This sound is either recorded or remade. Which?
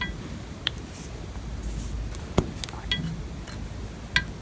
recorded